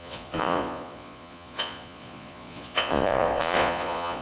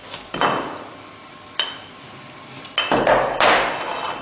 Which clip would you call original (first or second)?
second